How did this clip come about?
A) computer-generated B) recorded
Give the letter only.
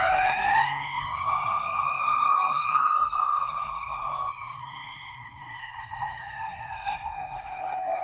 A